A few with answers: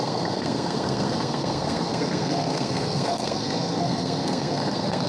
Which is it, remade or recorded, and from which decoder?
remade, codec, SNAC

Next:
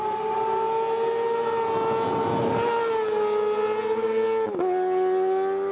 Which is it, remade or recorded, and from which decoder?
recorded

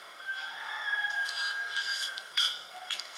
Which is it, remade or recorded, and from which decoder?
remade, codec, SNAC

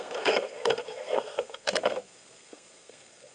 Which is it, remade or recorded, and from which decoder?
remade, codec, SNAC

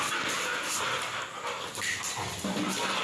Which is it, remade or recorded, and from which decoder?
recorded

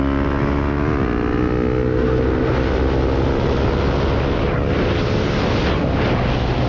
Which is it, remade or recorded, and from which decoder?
recorded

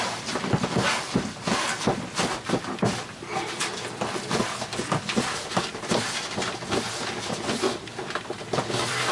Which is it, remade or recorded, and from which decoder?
recorded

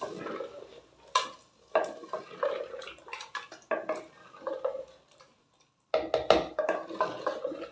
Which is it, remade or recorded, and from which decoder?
recorded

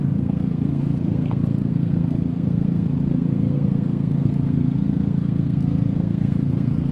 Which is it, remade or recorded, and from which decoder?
remade, codec, SNAC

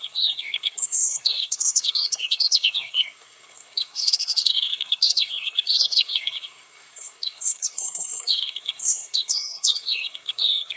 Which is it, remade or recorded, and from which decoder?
remade, codec, SNAC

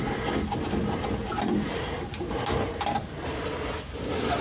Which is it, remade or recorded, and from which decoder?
recorded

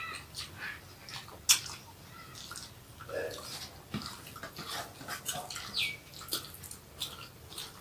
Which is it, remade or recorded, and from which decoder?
recorded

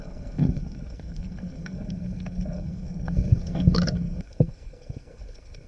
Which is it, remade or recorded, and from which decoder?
remade, codec, SNAC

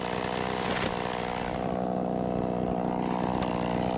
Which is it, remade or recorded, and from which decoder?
recorded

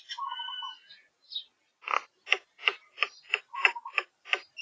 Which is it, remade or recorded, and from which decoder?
recorded